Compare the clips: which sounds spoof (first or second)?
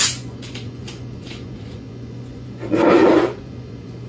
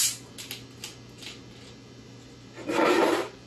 first